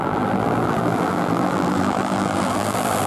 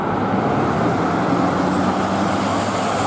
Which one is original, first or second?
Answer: second